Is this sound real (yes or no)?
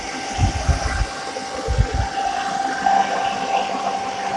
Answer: yes